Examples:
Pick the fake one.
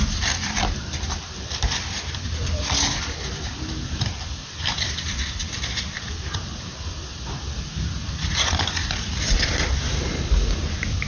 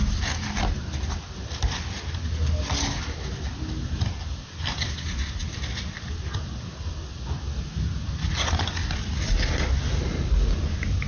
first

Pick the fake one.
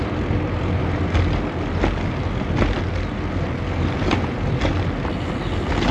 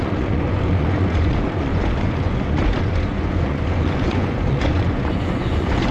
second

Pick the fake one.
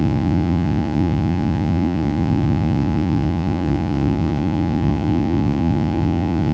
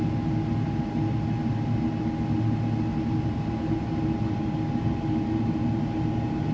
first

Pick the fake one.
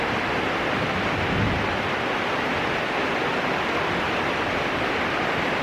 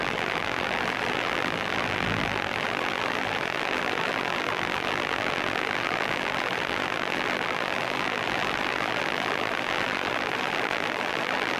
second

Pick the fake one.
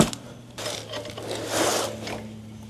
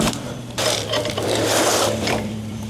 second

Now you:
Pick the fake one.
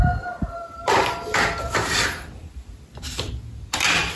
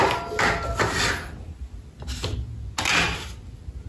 first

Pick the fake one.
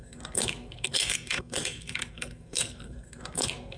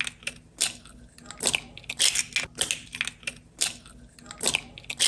first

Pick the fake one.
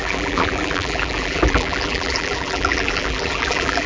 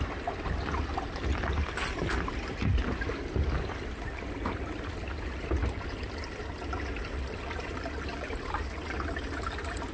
first